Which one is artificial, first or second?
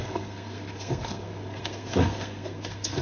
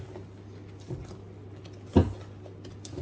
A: first